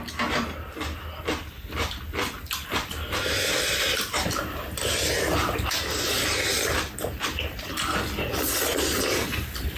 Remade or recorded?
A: recorded